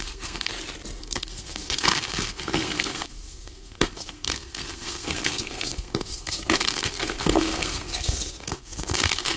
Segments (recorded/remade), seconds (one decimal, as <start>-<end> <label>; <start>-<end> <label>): 0.0-0.5 remade; 0.5-1.0 recorded; 1.0-9.4 remade